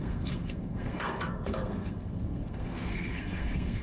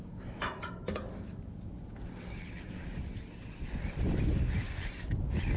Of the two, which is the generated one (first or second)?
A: first